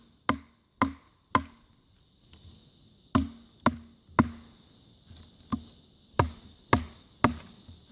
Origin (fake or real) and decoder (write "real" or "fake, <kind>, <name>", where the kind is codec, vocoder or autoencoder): real